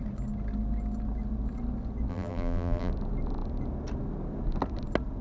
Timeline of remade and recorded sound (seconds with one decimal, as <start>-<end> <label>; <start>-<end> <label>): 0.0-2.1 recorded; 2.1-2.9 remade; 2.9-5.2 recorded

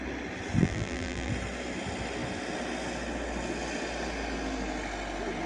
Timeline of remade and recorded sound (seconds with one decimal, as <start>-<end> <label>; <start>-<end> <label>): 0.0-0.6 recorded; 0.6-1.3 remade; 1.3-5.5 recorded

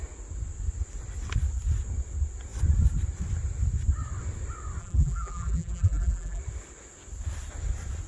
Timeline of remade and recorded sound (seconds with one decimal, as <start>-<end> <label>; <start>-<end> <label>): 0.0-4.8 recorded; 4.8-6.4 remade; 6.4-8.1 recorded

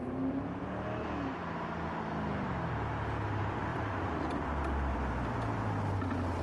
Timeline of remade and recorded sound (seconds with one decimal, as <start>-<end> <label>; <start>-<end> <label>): 0.0-3.7 recorded; 3.7-5.1 remade; 5.1-6.4 recorded

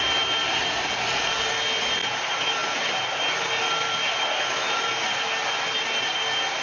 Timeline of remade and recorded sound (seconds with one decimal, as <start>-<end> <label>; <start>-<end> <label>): 0.0-0.4 recorded; 0.4-1.5 remade; 1.5-6.6 recorded